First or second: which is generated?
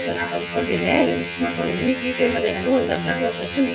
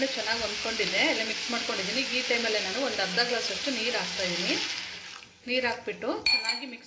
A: first